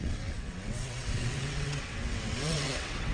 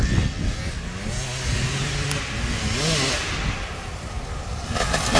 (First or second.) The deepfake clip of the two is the first